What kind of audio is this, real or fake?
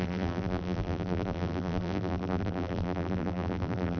fake